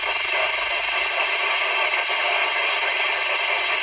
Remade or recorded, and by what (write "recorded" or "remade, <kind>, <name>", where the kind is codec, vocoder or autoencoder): recorded